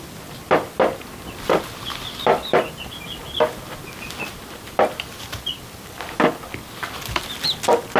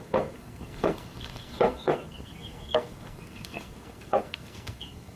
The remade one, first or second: second